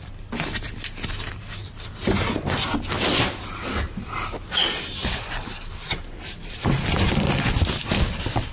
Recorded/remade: recorded